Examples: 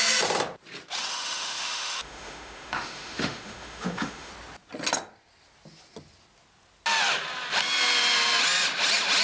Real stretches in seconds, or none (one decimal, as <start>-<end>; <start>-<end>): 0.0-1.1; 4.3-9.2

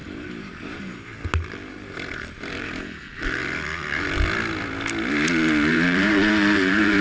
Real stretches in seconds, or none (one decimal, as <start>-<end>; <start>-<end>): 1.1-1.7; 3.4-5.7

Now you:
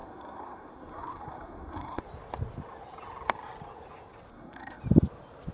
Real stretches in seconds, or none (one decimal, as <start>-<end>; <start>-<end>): 2.0-4.3; 4.8-5.5

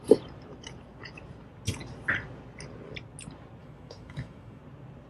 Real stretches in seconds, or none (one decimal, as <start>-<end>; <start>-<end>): 0.0-3.6; 4.6-5.1

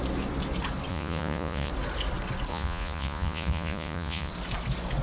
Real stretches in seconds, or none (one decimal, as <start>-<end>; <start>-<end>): 0.0-0.9; 1.7-2.5; 4.3-5.0

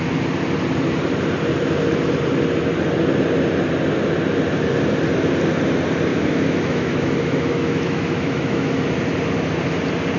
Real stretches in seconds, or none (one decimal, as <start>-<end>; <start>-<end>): 0.0-6.1; 8.8-10.2

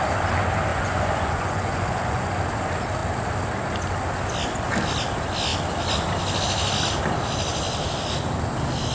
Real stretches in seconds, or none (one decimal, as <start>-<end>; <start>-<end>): 0.0-0.7; 2.3-8.9